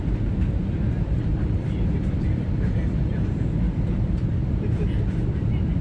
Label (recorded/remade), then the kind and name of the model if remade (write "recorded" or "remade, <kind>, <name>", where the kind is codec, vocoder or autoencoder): remade, vocoder, BigVGAN v2